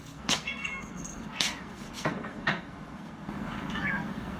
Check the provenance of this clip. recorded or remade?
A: remade